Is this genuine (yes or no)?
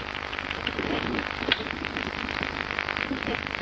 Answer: yes